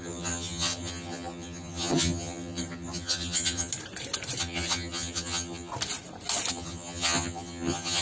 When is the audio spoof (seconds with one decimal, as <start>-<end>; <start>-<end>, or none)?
0.0-3.7; 4.4-5.7; 6.5-8.0